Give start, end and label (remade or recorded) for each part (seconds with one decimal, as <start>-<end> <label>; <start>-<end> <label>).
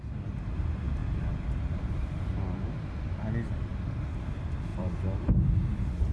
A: 0.0-1.0 recorded; 1.0-2.9 remade; 2.9-4.7 recorded; 4.7-5.5 remade; 5.5-6.1 recorded